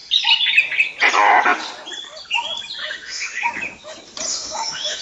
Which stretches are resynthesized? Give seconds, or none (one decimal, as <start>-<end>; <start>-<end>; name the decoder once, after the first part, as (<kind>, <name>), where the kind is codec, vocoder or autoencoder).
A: 2.8-3.5 (autoencoder, DAC-VAE); 4.3-5.0